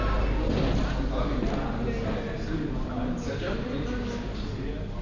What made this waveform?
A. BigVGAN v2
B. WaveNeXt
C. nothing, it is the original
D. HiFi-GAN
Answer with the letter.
C